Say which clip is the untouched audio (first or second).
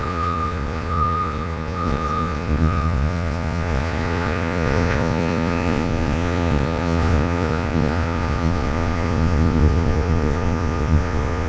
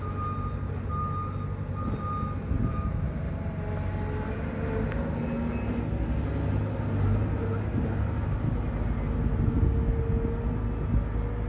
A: second